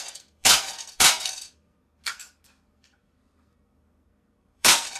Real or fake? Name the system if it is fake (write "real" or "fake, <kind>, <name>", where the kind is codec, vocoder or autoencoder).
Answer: fake, codec, SNAC